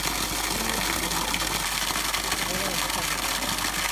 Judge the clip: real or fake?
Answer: real